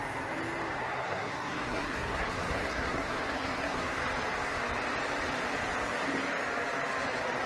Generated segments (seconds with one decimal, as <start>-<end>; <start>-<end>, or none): 0.8-4.0